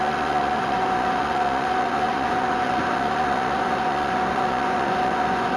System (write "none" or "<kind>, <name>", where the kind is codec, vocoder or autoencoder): vocoder, Vocos